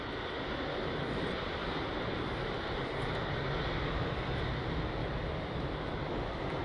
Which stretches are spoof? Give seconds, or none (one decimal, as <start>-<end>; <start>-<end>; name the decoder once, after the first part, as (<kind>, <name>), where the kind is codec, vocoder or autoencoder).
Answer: none